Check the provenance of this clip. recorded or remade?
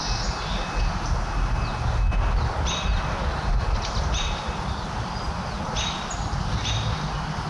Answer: recorded